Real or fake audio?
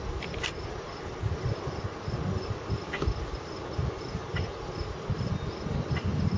real